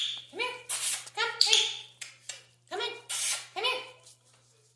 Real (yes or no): yes